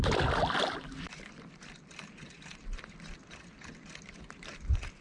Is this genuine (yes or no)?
yes